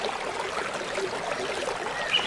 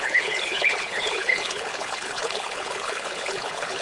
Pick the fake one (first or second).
second